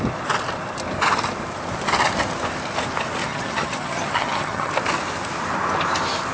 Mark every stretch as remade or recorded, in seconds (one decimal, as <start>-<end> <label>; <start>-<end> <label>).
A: 0.0-3.2 recorded; 3.2-4.7 remade; 4.7-6.3 recorded